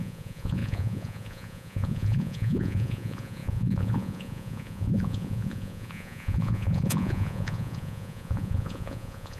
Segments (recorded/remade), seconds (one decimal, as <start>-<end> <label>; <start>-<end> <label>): 0.0-9.4 remade